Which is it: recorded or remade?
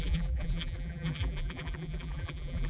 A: remade